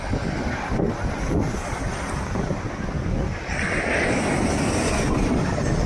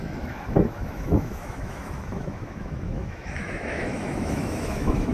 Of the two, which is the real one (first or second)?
first